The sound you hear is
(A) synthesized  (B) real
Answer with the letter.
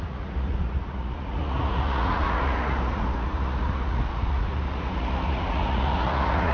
A